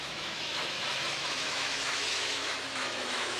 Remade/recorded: remade